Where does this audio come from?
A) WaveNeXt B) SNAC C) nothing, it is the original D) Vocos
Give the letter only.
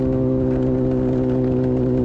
C